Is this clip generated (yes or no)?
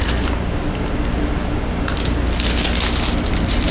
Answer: no